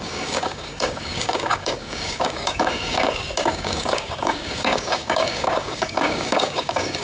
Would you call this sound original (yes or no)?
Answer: no